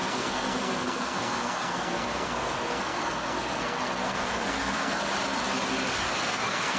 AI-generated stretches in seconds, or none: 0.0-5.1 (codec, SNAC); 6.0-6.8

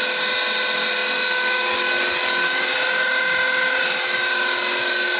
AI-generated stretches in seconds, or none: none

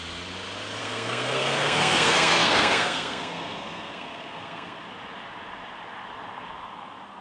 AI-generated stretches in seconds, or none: 0.8-4.8 (codec, SNAC)